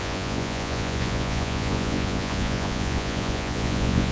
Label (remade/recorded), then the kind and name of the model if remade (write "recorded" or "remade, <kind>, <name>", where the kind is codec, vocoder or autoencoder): remade, vocoder, Vocos